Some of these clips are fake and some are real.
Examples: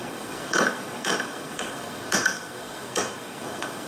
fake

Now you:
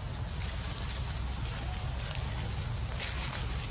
real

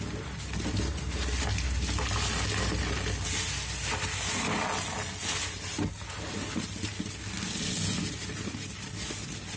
real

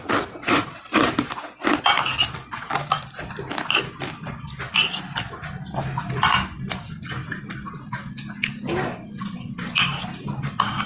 real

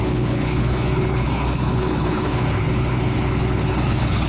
fake